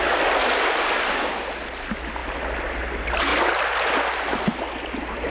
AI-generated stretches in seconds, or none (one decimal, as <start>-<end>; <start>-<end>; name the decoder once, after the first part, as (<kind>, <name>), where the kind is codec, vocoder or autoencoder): none